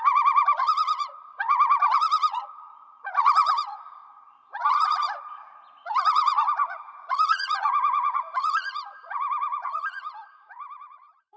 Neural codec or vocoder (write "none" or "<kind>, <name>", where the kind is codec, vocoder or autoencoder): vocoder, Vocos